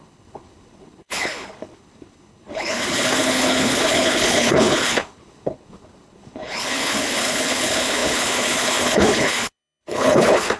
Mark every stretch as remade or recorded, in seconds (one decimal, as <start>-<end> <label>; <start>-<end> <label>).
0.0-10.6 remade